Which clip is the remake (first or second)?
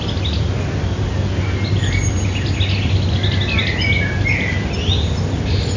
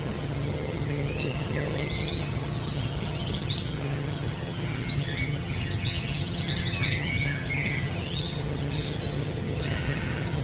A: second